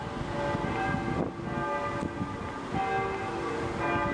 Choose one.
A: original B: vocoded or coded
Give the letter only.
A